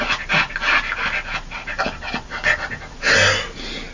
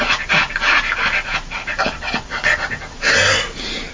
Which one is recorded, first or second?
first